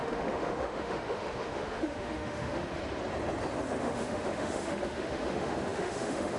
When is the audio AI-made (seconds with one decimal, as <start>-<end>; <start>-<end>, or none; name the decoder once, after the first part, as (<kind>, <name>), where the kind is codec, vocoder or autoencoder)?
0.0-2.8 (autoencoder, DAC-VAE); 3.8-6.4